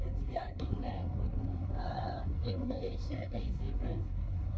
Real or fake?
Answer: fake